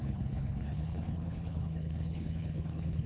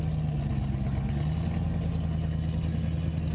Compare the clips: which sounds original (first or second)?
second